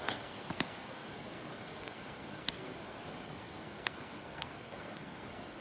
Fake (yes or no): yes